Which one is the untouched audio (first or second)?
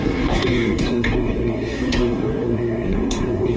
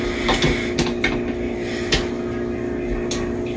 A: second